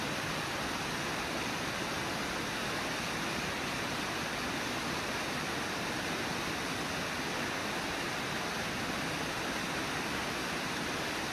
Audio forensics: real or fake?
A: real